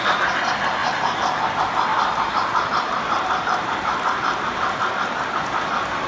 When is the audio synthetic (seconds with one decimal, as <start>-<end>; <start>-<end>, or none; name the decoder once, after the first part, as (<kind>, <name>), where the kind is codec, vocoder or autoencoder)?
0.8-1.4 (vocoder, BigVGAN v2); 1.9-5.0